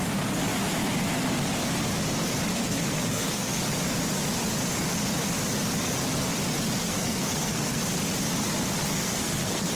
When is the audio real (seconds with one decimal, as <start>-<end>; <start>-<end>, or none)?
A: 0.0-2.5; 3.6-6.8; 7.8-8.8